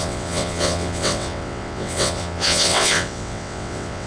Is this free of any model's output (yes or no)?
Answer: no